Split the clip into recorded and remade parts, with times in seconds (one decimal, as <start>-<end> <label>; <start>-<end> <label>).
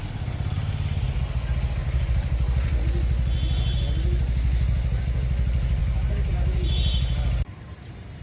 0.0-1.8 recorded; 1.8-2.8 remade; 2.8-5.8 recorded; 5.8-6.3 remade; 6.3-8.2 recorded